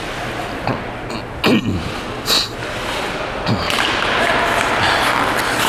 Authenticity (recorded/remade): recorded